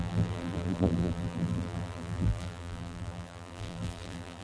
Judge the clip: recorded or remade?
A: remade